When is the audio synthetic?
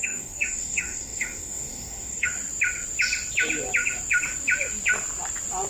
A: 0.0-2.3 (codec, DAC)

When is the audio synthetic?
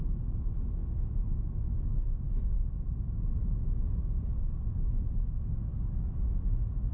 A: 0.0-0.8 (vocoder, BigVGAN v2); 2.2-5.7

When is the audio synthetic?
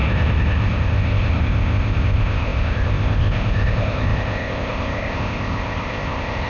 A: 0.0-6.5 (codec, ZipCodec)